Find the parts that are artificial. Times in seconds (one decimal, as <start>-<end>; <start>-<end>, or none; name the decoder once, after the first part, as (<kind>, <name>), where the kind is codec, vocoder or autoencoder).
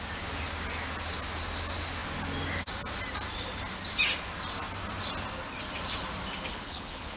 6.5-7.2 (codec, HILCodec)